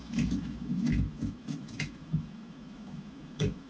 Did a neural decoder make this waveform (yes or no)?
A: yes